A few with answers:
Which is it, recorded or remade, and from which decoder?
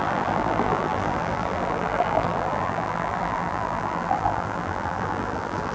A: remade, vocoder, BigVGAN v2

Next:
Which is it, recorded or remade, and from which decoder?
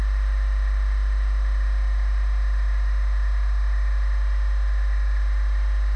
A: recorded